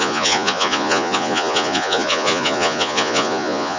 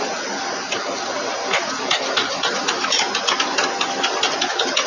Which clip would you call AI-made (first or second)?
first